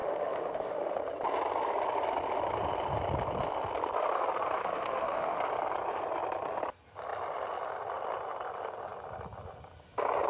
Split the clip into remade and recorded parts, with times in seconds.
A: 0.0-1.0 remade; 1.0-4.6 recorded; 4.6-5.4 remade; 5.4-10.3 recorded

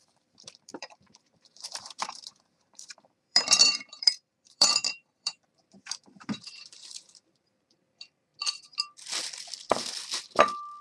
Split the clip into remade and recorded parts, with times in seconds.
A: 0.0-8.3 remade; 8.3-10.8 recorded

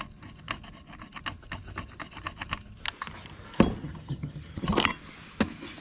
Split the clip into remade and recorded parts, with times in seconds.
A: 0.0-3.8 recorded; 3.8-4.7 remade; 4.7-5.8 recorded